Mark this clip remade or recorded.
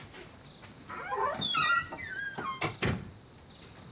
recorded